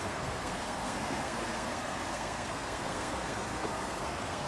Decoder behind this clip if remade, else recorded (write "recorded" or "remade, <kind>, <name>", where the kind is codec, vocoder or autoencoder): remade, codec, SNAC